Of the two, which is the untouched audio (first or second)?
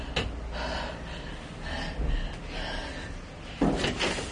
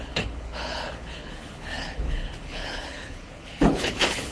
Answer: first